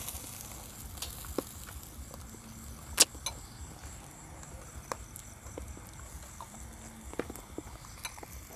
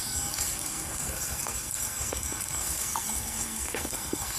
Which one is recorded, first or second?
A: first